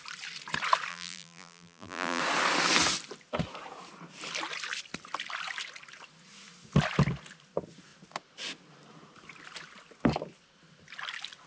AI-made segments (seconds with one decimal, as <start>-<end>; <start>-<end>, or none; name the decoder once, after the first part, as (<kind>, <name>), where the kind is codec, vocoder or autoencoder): 0.9-2.2 (vocoder, BigVGAN v2)